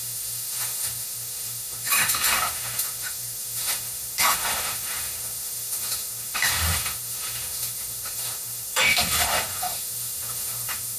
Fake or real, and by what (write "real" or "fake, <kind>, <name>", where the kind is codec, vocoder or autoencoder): fake, autoencoder, DAC-VAE